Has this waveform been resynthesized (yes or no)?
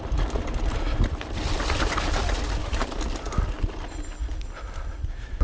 no